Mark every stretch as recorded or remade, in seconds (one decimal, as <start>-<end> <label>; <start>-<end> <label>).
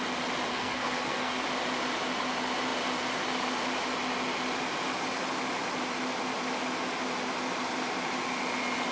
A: 0.0-0.5 recorded; 0.5-1.3 remade; 1.3-8.9 recorded